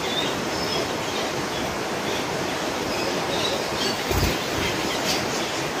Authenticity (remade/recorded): remade